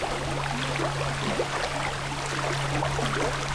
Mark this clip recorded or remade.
recorded